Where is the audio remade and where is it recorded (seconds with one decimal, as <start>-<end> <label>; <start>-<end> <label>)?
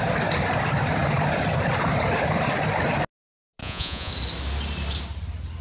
0.0-3.6 recorded; 3.6-4.1 remade; 4.1-5.6 recorded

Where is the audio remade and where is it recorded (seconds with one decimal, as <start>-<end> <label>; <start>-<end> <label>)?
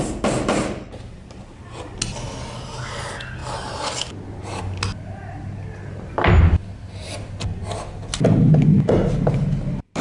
0.0-10.0 recorded